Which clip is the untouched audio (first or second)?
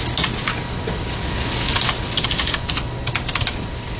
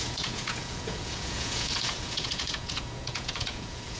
first